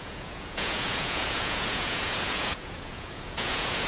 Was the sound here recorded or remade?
remade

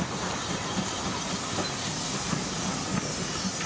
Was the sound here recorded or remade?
recorded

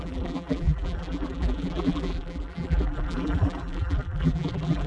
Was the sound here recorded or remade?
remade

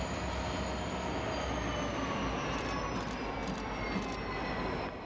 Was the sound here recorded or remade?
recorded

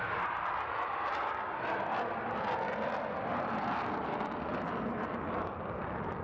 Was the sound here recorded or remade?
recorded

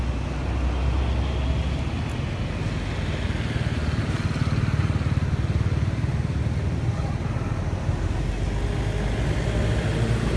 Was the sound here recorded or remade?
recorded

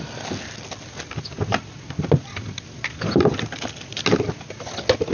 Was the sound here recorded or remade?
recorded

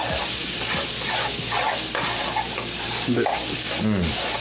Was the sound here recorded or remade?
recorded